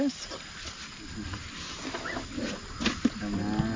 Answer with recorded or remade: recorded